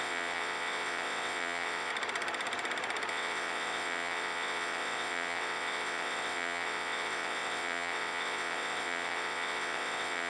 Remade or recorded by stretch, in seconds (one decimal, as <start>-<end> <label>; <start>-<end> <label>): 0.0-1.9 remade; 1.9-3.1 recorded; 3.1-10.3 remade